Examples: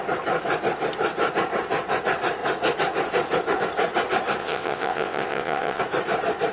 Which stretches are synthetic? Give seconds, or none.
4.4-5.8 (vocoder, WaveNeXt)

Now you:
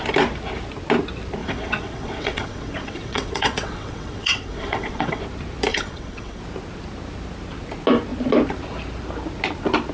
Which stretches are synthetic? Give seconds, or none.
1.4-5.2 (vocoder, WaveNeXt); 5.7-6.4

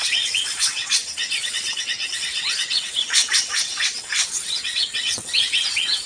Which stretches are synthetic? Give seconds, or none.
0.0-6.1 (vocoder, WaveNeXt)

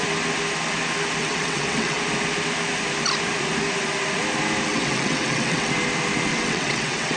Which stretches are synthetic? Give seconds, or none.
1.2-2.0 (vocoder, WaveNeXt); 4.7-5.7; 6.3-7.2

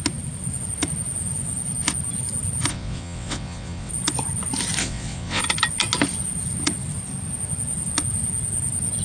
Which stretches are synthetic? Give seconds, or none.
2.7-3.9 (vocoder, WaveNeXt); 4.8-5.4

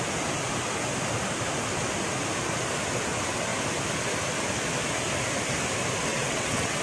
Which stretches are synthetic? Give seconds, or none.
6.1-6.8 (vocoder, WaveNeXt)

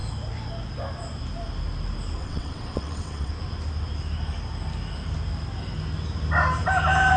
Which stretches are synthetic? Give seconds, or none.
2.2-3.3 (vocoder, WaveNeXt)